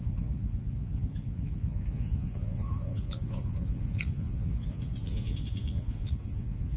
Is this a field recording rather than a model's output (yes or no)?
no